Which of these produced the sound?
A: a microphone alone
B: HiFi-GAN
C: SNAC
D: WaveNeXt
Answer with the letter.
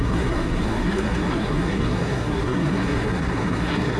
C